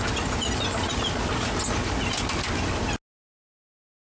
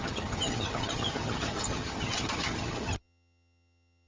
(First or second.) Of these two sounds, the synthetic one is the second